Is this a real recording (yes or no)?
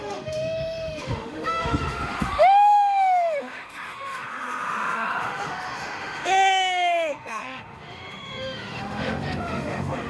no